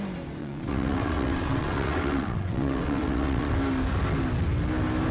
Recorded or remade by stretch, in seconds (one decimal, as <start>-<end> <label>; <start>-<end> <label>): 0.0-0.4 recorded; 0.4-3.5 remade; 3.5-5.1 recorded